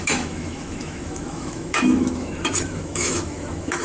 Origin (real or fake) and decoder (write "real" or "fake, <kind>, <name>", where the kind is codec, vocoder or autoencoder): fake, autoencoder, DAC-VAE